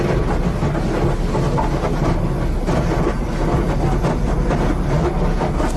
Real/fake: real